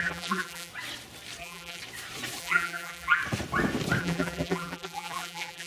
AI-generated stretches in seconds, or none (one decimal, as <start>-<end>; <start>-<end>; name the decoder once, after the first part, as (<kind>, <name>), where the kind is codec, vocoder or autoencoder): 0.0-0.7 (vocoder, BigVGAN v2); 1.4-1.8; 2.4-3.2; 4.0-5.7

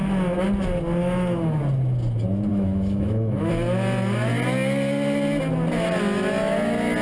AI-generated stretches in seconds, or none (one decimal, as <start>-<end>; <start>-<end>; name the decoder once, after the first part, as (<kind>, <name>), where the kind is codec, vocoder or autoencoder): 1.0-1.6 (autoencoder, DAC-VAE); 2.5-3.5

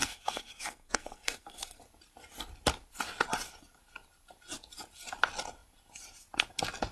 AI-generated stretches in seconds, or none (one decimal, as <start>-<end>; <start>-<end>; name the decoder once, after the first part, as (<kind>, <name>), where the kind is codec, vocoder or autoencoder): 0.0-1.8 (codec, SNAC)

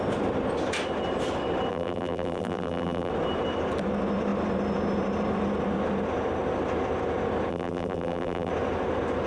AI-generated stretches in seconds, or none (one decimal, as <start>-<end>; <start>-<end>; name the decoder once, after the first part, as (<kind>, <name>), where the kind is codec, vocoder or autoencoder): 1.7-3.1 (vocoder, BigVGAN v2); 7.5-8.5

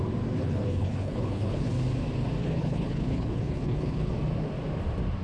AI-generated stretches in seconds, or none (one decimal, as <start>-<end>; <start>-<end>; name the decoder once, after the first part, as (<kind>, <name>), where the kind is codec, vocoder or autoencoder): 0.4-1.7 (codec, HILCodec); 2.4-4.1

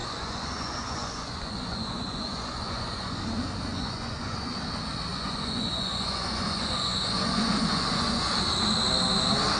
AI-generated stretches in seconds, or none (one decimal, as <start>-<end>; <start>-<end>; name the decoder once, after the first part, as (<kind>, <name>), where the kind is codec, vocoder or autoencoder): 0.0-3.2 (vocoder, Vocos); 3.7-4.5; 5.1-8.3